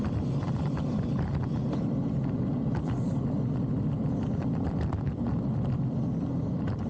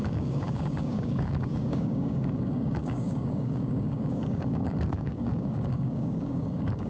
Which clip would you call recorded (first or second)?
first